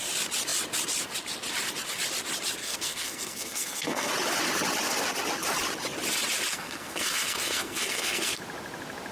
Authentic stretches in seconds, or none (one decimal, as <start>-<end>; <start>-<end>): 0.0-2.6; 4.1-6.5; 8.4-9.1